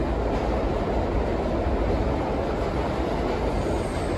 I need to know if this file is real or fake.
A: real